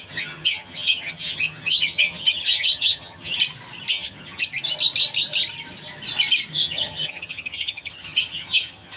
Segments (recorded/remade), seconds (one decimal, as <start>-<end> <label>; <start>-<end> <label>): 0.0-3.3 remade; 3.3-3.9 recorded; 3.9-4.5 remade; 4.5-6.5 recorded; 6.5-9.0 remade